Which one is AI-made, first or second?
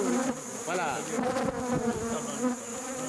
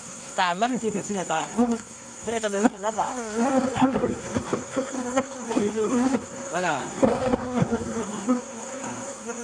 second